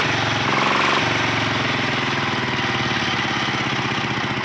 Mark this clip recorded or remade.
recorded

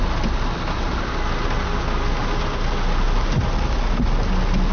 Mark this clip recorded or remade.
recorded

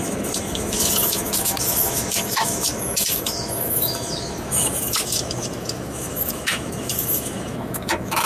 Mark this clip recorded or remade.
remade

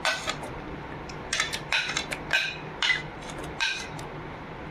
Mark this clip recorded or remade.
recorded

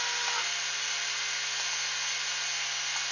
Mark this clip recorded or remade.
recorded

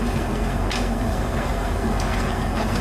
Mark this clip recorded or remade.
remade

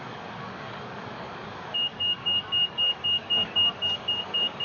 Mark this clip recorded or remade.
remade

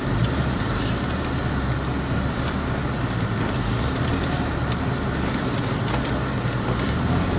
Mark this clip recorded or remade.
recorded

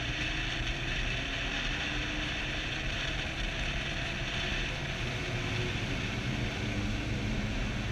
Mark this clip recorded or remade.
recorded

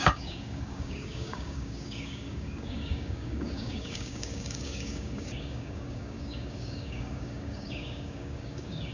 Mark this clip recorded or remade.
remade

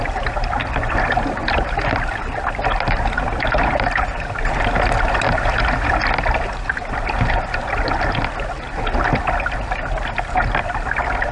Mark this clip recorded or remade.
recorded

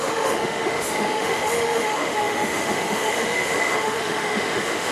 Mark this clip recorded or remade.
remade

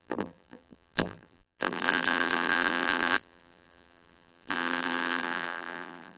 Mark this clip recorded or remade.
remade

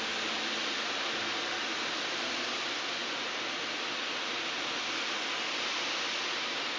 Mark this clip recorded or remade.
recorded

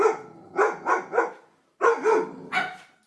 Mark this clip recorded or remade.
recorded